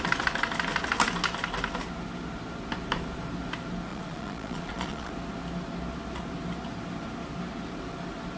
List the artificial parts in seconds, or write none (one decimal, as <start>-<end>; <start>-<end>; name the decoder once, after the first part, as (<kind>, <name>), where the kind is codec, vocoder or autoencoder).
3.9-5.1 (vocoder, Vocos)